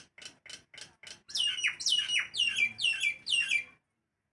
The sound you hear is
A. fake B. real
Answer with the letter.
B